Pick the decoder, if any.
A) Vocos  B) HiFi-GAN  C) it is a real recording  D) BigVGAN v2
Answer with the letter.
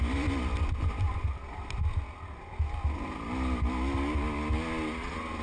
C